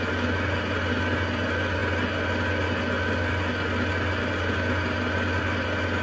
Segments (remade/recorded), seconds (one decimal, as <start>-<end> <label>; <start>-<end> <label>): 0.0-6.0 recorded